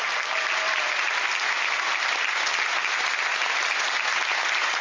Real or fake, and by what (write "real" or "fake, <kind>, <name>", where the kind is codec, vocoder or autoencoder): real